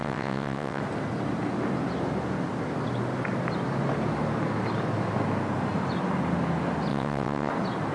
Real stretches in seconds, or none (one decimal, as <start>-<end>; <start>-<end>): 0.8-6.9; 7.5-7.9